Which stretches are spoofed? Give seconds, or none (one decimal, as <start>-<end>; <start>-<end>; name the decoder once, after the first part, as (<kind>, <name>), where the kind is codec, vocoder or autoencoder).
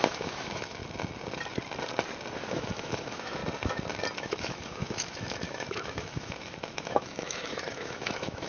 0.0-0.8 (autoencoder, DAC-VAE); 2.5-3.4; 4.2-8.5